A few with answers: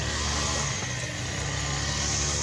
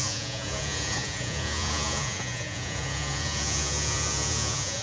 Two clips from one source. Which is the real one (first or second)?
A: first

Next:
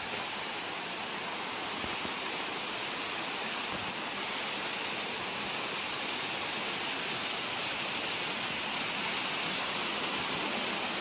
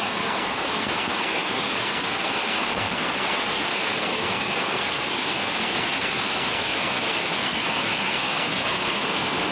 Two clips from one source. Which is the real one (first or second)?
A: first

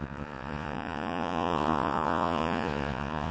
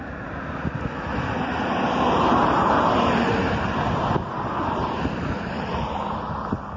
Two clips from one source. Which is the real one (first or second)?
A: second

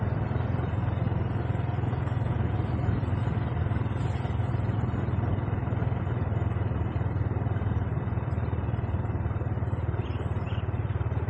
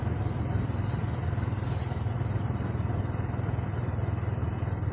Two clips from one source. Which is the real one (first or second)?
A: second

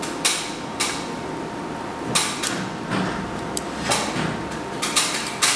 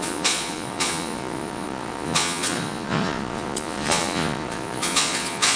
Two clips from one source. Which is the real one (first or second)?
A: first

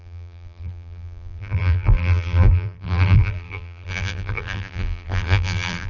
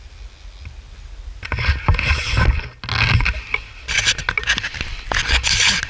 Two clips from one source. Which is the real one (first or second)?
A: second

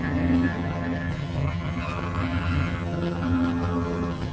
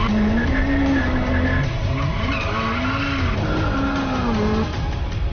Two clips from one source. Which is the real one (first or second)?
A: second